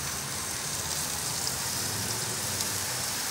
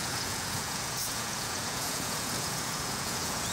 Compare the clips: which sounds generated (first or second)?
second